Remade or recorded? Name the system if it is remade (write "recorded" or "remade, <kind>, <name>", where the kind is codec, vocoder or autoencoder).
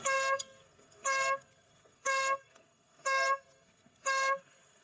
remade, codec, SNAC